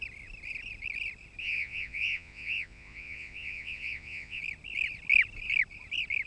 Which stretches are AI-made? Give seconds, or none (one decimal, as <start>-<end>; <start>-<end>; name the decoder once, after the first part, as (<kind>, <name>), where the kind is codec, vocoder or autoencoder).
1.4-4.4 (vocoder, Vocos)

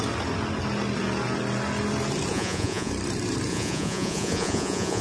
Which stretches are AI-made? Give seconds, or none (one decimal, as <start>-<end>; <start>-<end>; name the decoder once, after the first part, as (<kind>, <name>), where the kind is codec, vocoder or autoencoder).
2.3-2.9 (vocoder, Vocos); 3.5-5.0